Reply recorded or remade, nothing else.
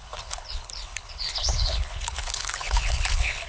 remade